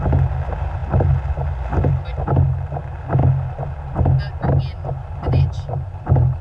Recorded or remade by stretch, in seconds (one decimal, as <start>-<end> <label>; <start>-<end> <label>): 0.0-5.0 recorded; 5.0-6.4 remade